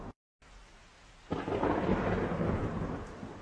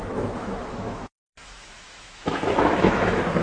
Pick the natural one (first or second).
first